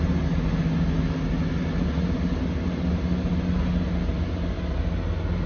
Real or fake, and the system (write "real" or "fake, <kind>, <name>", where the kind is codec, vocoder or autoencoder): real